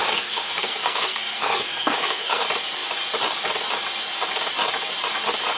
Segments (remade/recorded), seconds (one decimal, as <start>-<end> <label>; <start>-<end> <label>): 0.0-2.4 remade; 2.4-5.6 recorded